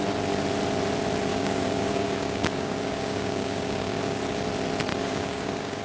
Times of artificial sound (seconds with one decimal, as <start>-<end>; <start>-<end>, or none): 1.3-4.2; 4.9-5.8